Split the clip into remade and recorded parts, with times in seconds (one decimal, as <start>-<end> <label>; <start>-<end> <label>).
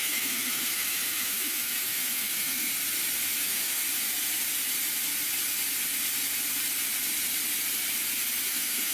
0.0-2.7 remade; 2.7-3.4 recorded; 3.4-3.8 remade; 3.8-8.5 recorded; 8.5-8.9 remade